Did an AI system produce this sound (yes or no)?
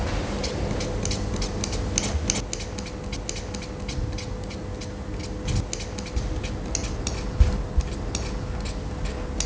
no